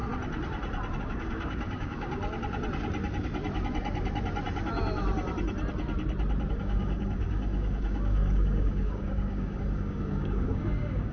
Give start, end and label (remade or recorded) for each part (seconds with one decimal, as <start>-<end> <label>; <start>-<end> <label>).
0.0-1.0 recorded; 1.0-2.2 remade; 2.2-6.5 recorded; 6.5-11.1 remade